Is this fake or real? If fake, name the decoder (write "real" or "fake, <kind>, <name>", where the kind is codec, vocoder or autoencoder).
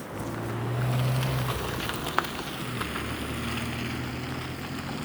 real